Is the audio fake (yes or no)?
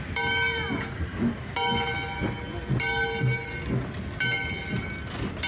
no